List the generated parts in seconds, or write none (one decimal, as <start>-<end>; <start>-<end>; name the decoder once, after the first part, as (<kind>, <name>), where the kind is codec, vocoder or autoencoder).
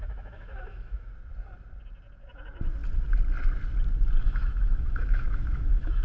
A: 0.0-1.1 (autoencoder, DAC-VAE); 4.2-6.0